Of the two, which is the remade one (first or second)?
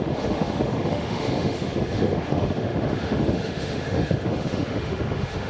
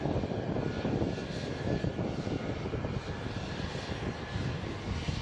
first